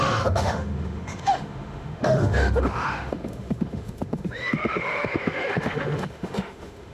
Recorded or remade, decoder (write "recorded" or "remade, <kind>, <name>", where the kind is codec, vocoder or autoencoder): remade, autoencoder, DAC-VAE